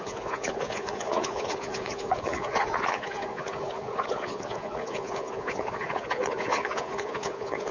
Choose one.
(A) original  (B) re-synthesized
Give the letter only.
B